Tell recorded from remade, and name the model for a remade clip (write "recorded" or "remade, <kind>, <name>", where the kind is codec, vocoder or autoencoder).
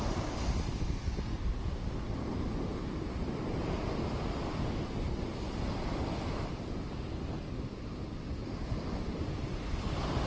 recorded